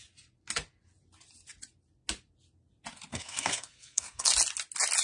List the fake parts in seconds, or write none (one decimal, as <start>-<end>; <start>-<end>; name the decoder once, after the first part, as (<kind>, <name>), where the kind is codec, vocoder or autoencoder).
3.1-4.3 (codec, SNAC)

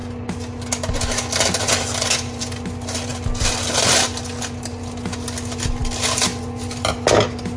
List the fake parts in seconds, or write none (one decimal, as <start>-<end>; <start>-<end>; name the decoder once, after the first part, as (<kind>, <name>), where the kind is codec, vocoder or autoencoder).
none

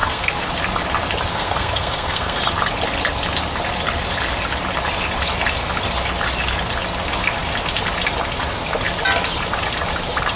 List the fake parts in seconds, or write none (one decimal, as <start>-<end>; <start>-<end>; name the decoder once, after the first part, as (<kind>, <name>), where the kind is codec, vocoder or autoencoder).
0.0-0.5 (codec, SNAC); 1.3-2.4

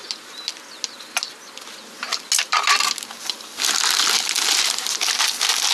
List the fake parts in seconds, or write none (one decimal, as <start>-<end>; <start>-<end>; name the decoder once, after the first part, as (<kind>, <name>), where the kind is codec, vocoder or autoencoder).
none

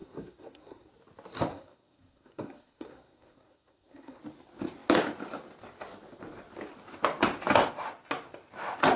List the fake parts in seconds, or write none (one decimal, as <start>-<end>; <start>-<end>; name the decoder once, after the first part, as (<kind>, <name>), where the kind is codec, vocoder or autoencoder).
0.0-0.9 (codec, SNAC); 1.5-4.2

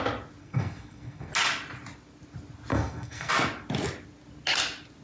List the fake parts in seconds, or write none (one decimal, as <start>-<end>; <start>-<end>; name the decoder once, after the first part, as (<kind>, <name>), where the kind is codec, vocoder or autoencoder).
0.4-1.3 (codec, SNAC); 2.7-3.3

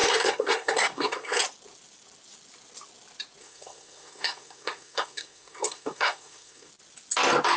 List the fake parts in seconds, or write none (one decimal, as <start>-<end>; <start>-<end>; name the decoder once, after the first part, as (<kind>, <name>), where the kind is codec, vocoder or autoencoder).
0.0-1.4 (codec, SNAC); 3.4-6.7